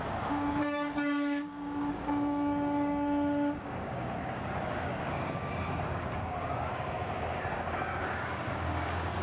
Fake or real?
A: fake